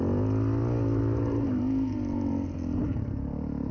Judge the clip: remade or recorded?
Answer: recorded